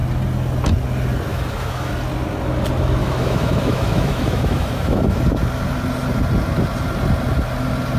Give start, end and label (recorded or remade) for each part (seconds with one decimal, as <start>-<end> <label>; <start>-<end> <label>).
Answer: 0.0-1.3 recorded; 1.3-1.9 remade; 1.9-3.0 recorded; 3.0-5.2 remade; 5.2-8.0 recorded